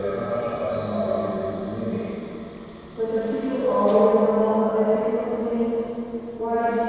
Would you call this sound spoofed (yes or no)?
no